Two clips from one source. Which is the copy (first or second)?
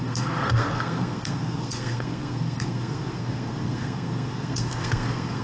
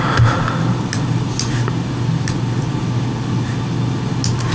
first